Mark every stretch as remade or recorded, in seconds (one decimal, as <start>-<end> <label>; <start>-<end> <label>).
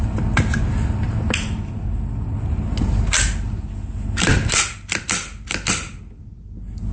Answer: 0.0-6.9 recorded